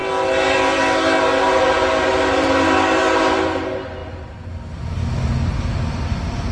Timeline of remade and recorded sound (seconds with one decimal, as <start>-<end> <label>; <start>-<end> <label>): 0.0-6.5 recorded